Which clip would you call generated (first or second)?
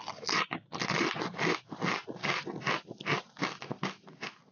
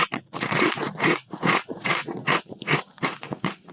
second